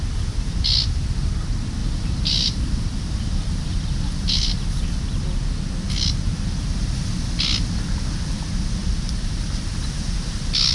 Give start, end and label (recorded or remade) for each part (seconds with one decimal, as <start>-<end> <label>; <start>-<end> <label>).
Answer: 0.0-1.8 recorded; 1.8-4.8 remade; 4.8-8.8 recorded; 8.8-9.6 remade; 9.6-10.7 recorded

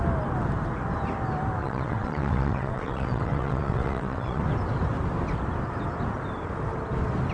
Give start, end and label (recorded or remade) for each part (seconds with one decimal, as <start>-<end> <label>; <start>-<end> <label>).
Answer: 0.0-1.6 recorded; 1.6-4.4 remade; 4.4-7.3 recorded

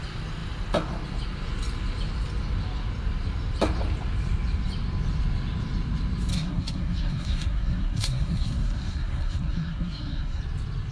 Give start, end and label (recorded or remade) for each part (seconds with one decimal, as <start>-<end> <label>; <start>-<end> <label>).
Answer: 0.0-6.3 recorded; 6.3-10.4 remade; 10.4-10.9 recorded